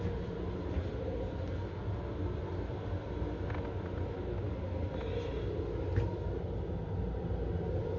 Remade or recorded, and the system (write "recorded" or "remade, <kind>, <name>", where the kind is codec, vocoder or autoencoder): recorded